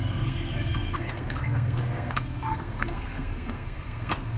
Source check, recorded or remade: remade